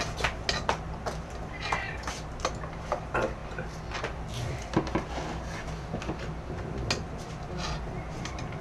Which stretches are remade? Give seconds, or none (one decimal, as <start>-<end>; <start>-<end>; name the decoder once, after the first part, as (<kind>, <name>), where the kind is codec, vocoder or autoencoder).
none